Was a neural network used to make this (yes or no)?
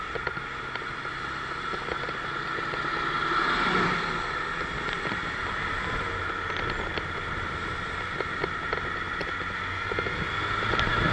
yes